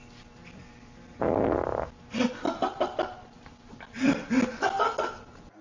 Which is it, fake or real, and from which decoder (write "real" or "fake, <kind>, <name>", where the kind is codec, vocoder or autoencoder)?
real